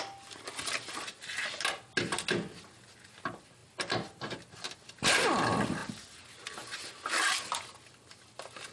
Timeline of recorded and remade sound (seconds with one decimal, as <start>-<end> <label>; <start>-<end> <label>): 0.0-8.7 recorded